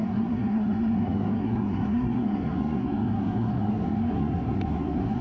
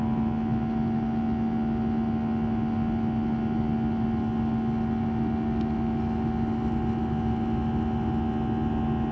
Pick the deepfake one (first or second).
first